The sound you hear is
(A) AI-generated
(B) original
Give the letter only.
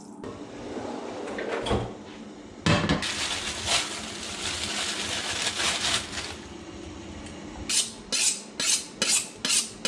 B